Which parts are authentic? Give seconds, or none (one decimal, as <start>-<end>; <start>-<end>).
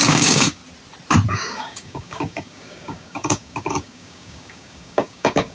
0.6-1.3